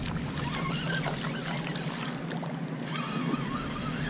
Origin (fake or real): real